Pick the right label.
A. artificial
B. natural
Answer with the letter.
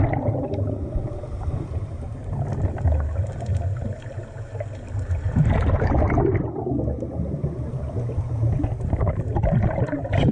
B